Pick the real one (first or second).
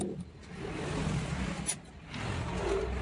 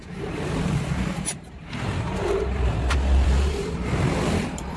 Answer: first